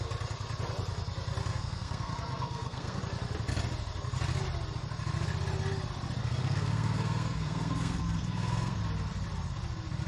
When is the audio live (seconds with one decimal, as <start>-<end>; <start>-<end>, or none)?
0.0-1.5; 3.0-6.2; 8.8-10.1